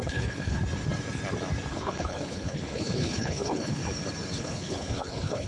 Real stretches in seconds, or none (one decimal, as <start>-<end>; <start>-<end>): 0.6-1.7; 3.8-4.4